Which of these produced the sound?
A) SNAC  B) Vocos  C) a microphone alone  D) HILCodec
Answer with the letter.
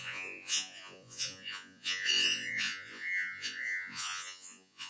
B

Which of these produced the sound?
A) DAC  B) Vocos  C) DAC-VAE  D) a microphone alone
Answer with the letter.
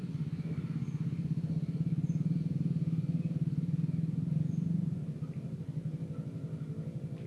D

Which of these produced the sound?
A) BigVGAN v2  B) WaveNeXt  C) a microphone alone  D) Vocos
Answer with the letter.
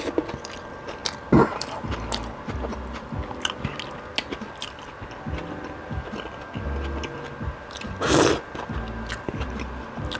C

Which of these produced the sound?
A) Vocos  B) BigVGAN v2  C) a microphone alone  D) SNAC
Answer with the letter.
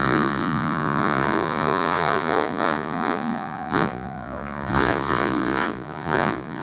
A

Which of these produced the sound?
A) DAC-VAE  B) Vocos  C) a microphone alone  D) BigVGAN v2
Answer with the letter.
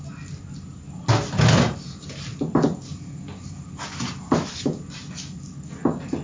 C